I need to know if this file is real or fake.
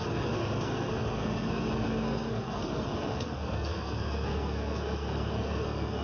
fake